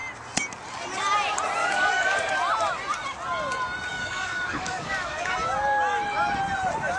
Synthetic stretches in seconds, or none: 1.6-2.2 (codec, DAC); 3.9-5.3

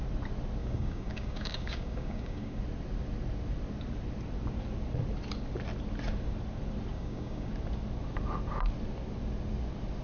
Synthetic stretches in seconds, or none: 0.6-2.6 (codec, DAC); 6.9-7.5

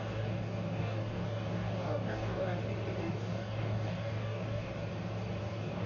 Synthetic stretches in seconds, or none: 0.0-2.5 (codec, DAC); 3.0-4.7; 5.4-5.9

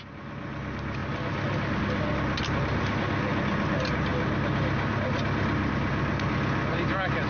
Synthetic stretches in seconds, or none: none

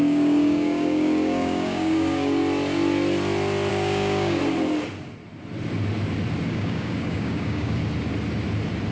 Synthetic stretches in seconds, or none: 0.0-2.4 (codec, DAC); 3.7-4.4; 6.5-7.8

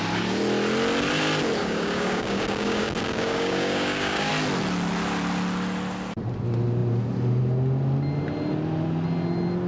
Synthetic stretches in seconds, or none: 1.6-4.3 (codec, DAC)

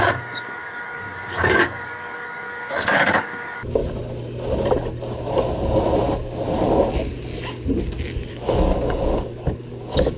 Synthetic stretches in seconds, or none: 0.0-3.8 (codec, DAC); 8.3-10.2